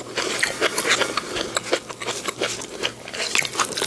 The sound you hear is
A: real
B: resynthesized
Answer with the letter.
A